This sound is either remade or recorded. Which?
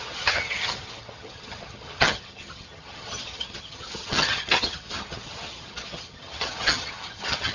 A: remade